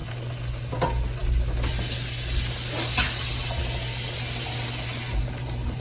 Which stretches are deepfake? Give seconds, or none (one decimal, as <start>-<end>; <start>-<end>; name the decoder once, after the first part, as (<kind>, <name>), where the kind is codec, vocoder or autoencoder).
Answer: none